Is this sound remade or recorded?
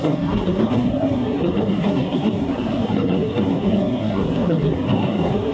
remade